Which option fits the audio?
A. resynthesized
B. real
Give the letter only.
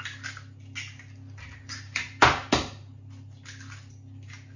B